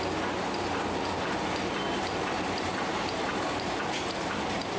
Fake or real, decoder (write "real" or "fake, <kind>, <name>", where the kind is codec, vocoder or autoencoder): real